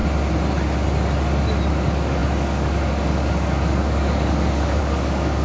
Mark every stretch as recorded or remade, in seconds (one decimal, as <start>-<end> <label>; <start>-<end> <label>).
0.0-1.7 recorded; 1.7-5.4 remade